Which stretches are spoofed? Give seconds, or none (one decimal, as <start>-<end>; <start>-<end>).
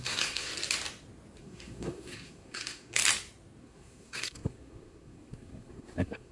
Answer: 0.0-0.5; 1.4-3.0; 3.6-6.3